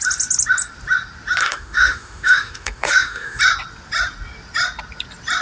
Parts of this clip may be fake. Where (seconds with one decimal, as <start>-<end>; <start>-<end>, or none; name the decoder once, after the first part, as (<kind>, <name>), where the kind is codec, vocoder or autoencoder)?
1.4-3.4 (autoencoder, DAC-VAE)